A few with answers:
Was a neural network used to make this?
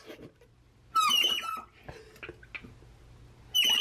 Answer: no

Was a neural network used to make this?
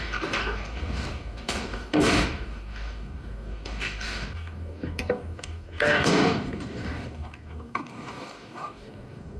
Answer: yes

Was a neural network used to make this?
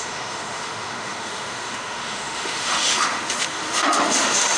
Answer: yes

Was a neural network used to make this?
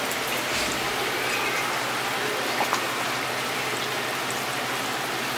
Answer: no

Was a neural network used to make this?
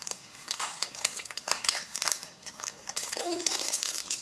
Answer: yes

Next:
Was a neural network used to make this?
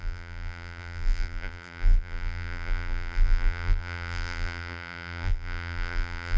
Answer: yes